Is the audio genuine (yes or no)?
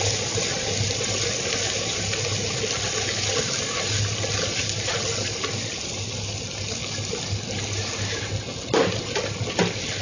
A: yes